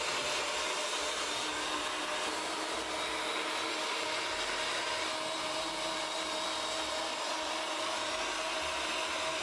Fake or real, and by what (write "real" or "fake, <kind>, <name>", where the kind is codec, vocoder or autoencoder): real